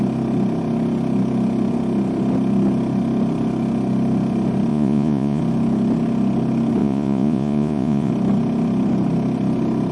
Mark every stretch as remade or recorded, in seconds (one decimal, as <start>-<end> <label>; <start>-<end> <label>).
0.0-4.7 recorded; 4.7-5.4 remade; 5.4-6.8 recorded; 6.8-8.1 remade; 8.1-9.9 recorded